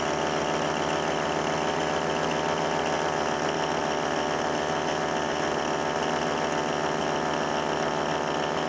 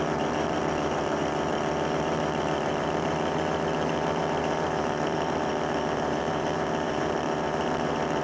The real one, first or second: first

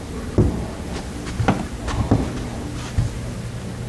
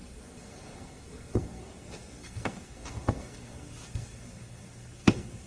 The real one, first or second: first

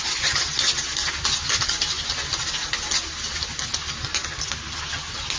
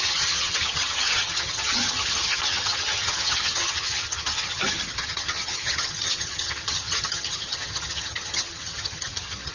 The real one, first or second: first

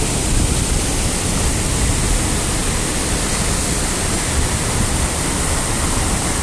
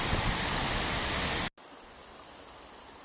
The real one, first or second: second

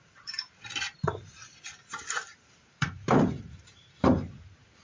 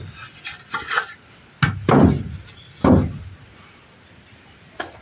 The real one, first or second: second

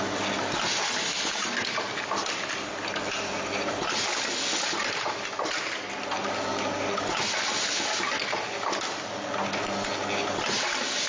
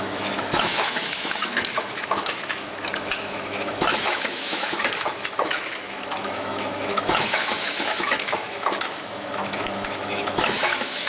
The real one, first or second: first